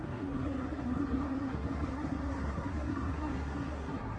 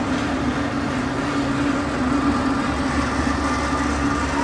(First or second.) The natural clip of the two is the second